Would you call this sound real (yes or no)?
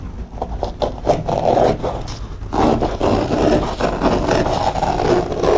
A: yes